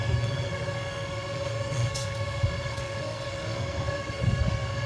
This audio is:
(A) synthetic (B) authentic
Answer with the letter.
A